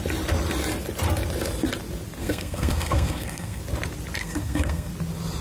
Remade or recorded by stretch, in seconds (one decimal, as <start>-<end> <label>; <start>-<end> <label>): 0.0-2.2 recorded; 2.2-3.6 remade; 3.6-4.2 recorded; 4.2-4.9 remade; 4.9-5.4 recorded